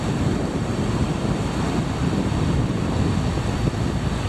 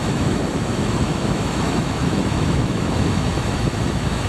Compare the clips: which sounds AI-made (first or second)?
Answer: second